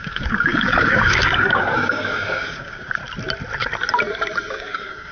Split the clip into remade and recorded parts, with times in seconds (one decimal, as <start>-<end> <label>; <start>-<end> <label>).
0.0-3.0 remade; 3.0-4.5 recorded; 4.5-5.1 remade